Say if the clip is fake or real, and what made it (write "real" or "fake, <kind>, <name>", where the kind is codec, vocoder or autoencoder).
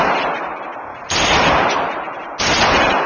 real